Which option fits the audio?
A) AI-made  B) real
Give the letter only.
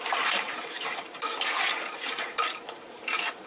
A